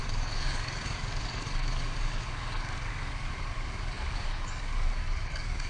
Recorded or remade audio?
remade